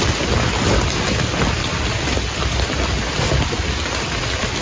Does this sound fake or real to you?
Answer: real